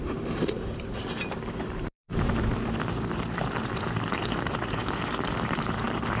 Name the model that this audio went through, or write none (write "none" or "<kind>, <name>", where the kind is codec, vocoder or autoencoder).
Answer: vocoder, BigVGAN v2